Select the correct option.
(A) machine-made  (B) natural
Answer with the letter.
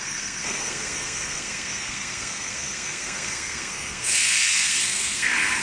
A